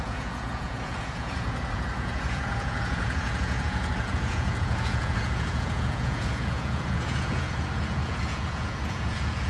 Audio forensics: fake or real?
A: fake